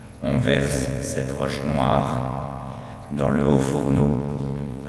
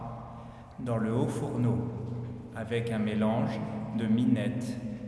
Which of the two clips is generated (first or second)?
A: first